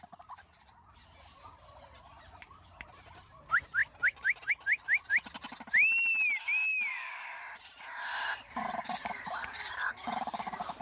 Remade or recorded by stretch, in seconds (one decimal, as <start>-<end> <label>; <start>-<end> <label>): 0.0-6.9 recorded; 6.9-7.4 remade; 7.4-10.8 recorded

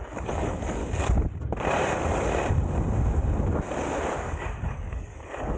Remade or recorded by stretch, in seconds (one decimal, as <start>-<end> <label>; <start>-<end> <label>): 0.0-0.8 remade; 0.8-4.2 recorded; 4.2-5.6 remade

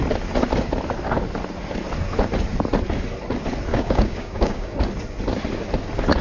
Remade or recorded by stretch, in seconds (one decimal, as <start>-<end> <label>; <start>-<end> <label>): 0.0-3.7 recorded; 3.7-4.8 remade; 4.8-6.2 recorded

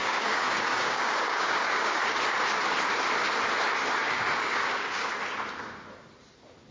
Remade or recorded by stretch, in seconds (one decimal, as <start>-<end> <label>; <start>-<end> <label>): 0.0-2.1 remade; 2.1-4.0 recorded; 4.0-5.1 remade; 5.1-6.7 recorded

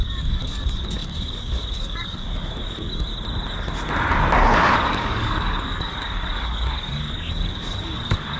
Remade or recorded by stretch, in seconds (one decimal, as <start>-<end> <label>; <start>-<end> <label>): 0.0-3.1 remade; 3.1-4.9 recorded; 4.9-8.4 remade

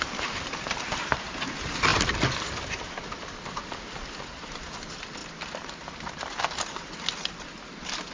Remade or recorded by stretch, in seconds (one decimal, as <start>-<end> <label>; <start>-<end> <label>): 0.0-8.1 recorded

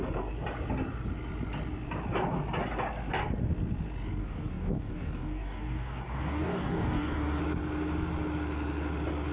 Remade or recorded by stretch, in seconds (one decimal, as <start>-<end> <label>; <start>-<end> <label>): 0.0-4.2 recorded; 4.2-7.4 remade; 7.4-9.3 recorded